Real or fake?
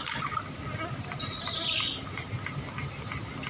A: real